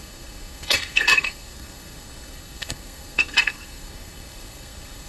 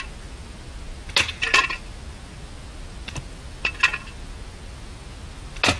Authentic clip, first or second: second